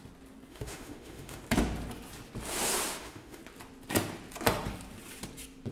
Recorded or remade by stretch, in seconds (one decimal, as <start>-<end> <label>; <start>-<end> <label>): 0.0-0.5 recorded; 0.5-1.4 remade; 1.4-3.0 recorded; 3.0-3.4 remade; 3.4-5.7 recorded